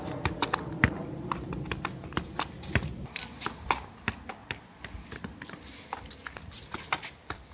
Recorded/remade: recorded